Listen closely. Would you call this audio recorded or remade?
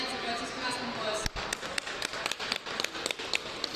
recorded